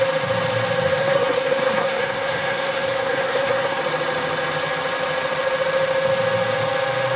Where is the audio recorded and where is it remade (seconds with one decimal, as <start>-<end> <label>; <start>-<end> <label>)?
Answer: 0.0-1.0 recorded; 1.0-3.8 remade; 3.8-7.2 recorded

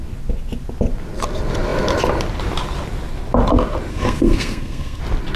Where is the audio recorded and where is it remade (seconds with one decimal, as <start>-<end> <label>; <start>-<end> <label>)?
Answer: 0.0-3.9 recorded; 3.9-5.0 remade; 5.0-5.4 recorded

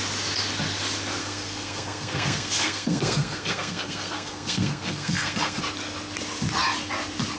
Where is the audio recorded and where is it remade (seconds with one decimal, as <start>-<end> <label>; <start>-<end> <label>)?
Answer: 0.0-1.2 recorded; 1.2-5.6 remade; 5.6-7.4 recorded

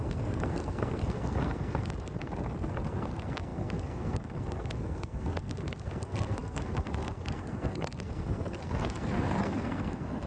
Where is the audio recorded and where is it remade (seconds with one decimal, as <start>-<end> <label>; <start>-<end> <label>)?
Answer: 0.0-10.3 remade